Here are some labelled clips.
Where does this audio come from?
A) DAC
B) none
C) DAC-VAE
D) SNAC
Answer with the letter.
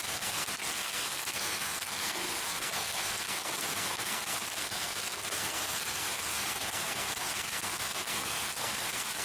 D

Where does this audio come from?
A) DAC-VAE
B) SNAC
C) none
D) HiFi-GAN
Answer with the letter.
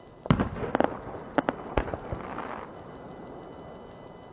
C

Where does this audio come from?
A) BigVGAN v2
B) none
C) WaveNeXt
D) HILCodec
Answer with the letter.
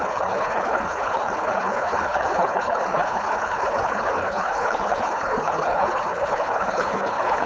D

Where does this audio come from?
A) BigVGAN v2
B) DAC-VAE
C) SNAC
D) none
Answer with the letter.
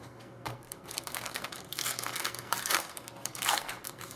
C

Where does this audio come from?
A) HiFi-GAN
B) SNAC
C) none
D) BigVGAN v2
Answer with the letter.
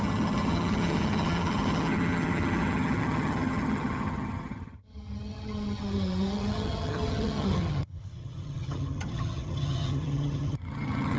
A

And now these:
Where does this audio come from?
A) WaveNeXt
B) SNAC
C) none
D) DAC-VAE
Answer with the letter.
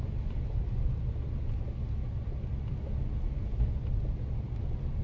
C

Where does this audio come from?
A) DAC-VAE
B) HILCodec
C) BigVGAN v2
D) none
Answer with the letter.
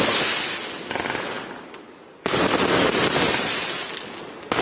D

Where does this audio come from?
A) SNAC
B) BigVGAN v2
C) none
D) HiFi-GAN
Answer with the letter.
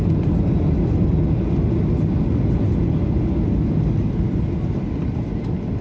C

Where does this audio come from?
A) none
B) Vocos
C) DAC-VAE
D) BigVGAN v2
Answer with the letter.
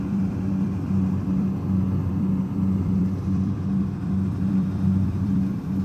D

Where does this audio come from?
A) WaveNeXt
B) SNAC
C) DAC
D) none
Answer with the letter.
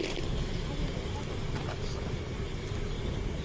D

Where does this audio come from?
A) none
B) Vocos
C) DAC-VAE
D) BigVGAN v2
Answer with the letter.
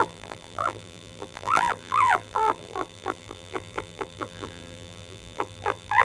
D